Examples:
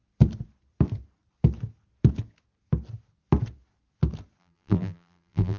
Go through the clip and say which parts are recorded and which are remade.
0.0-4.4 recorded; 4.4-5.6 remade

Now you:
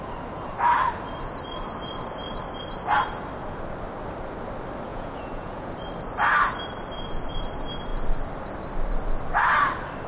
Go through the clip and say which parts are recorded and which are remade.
0.0-4.9 recorded; 4.9-5.7 remade; 5.7-10.1 recorded

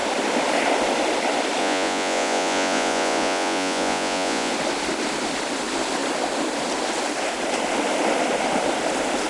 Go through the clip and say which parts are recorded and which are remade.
0.0-1.6 recorded; 1.6-4.5 remade; 4.5-9.3 recorded

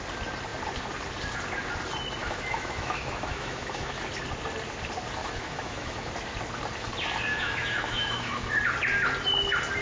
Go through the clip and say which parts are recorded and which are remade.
0.0-2.2 recorded; 2.2-4.0 remade; 4.0-5.2 recorded; 5.2-6.1 remade; 6.1-7.3 recorded; 7.3-8.6 remade; 8.6-9.8 recorded